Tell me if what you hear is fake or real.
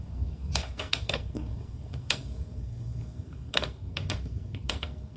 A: fake